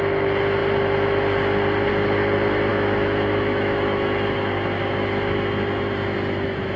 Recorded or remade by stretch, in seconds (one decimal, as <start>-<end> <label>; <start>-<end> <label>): 0.0-2.7 recorded; 2.7-6.8 remade